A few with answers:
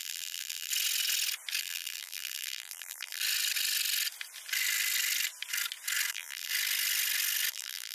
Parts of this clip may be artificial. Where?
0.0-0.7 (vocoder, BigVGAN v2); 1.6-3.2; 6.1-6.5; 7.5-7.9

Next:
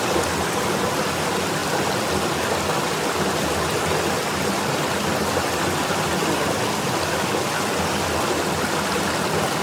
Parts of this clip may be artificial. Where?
none

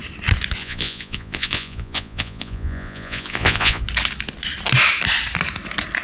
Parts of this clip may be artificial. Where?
0.6-3.8 (vocoder, Vocos)

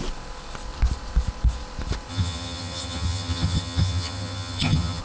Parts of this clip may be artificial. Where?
2.1-5.0 (vocoder, HiFi-GAN)

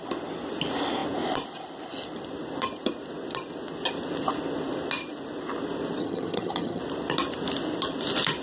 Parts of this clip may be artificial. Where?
6.0-6.8 (vocoder, HiFi-GAN)

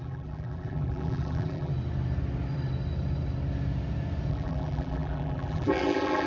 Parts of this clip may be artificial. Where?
0.0-1.7 (vocoder, BigVGAN v2); 4.3-6.3